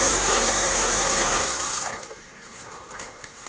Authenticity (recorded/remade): remade